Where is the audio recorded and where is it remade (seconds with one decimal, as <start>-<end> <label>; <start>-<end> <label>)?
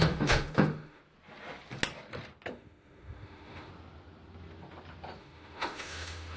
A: 0.0-1.0 remade; 1.0-2.5 recorded; 2.5-3.7 remade; 3.7-5.2 recorded; 5.2-6.4 remade